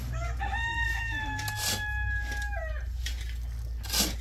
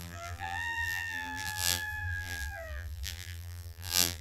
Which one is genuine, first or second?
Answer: first